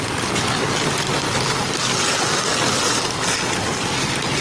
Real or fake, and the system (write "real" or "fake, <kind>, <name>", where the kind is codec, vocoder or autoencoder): real